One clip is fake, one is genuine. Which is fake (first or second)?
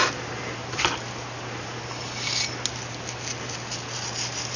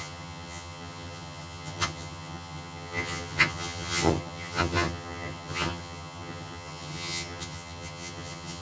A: second